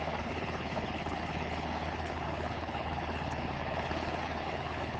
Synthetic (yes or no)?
yes